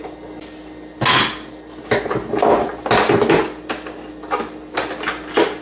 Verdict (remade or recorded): recorded